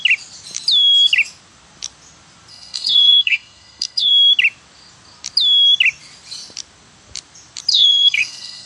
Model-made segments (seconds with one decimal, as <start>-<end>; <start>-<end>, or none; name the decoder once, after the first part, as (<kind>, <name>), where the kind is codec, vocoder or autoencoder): 2.5-4.1 (codec, SNAC); 7.7-8.7